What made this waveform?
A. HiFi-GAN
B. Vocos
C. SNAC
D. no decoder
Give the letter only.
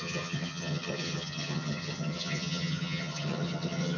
A